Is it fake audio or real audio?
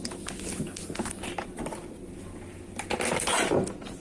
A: real